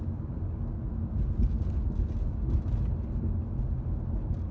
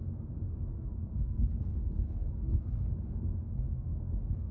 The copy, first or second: second